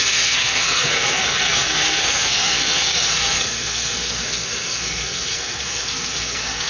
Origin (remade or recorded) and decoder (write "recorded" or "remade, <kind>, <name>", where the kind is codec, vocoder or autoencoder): remade, codec, SNAC